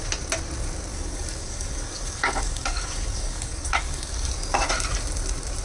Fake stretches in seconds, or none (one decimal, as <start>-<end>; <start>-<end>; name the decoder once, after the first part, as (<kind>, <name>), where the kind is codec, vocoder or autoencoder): 0.9-4.3 (codec, DAC)